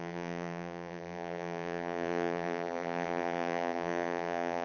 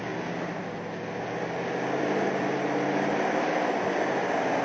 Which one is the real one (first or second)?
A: second